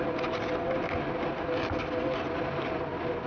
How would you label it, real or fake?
real